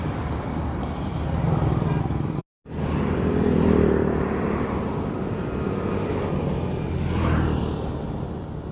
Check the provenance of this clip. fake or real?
real